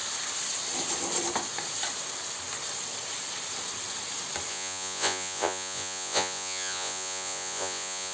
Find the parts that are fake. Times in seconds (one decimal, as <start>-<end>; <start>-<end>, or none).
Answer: 4.5-8.1